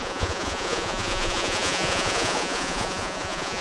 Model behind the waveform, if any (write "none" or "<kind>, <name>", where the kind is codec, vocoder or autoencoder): vocoder, Vocos